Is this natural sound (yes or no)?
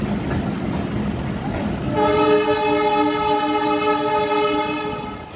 yes